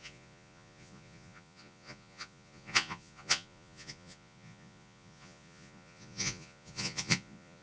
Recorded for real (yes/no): no